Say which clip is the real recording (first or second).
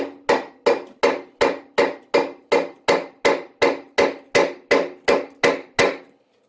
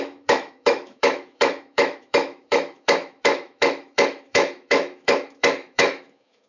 first